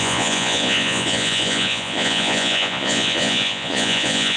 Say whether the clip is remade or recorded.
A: remade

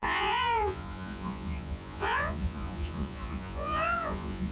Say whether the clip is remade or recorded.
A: remade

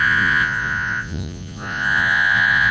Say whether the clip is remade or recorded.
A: remade